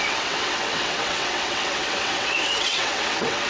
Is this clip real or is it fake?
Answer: fake